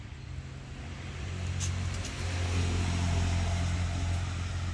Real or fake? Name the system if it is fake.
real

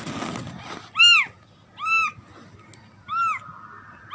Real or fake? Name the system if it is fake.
real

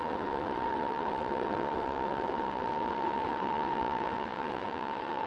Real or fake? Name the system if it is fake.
fake, vocoder, WaveNeXt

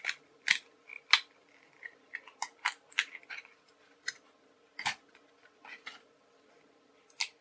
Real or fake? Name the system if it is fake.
real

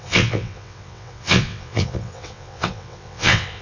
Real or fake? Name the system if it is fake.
fake, vocoder, WaveNeXt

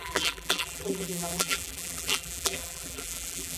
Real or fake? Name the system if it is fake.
fake, vocoder, BigVGAN v2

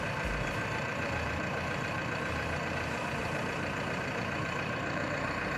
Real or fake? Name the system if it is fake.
fake, vocoder, BigVGAN v2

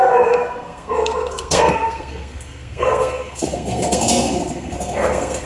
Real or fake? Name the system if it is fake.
fake, codec, SNAC